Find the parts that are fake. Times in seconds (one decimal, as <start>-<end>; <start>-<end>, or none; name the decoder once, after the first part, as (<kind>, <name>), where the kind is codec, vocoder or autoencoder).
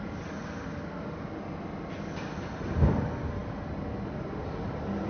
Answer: none